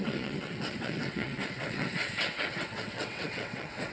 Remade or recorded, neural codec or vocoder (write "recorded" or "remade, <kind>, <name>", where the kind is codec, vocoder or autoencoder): remade, vocoder, WaveNeXt